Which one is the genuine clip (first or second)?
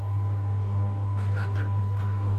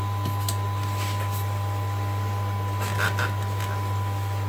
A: second